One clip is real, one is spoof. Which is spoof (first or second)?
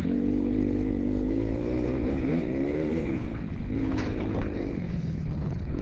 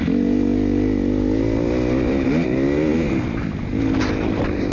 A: first